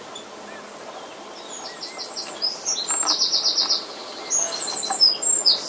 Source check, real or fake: real